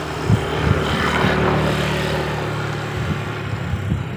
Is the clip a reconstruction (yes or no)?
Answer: no